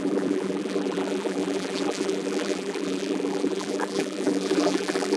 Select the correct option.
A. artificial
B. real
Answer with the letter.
A